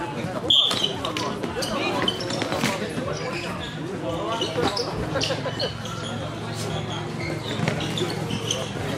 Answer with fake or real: real